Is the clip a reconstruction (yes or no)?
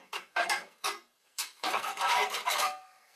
yes